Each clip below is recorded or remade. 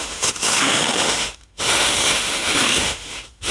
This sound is remade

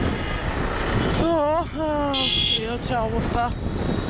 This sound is recorded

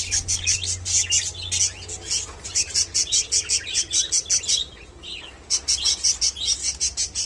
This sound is recorded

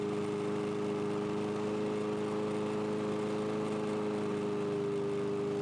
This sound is recorded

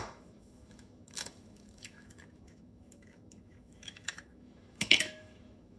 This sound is remade